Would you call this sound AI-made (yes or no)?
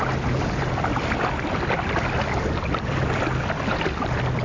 no